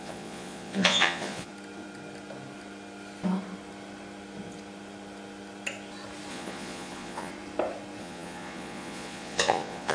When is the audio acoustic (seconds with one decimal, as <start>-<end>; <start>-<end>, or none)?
1.5-6.3; 7.3-8.0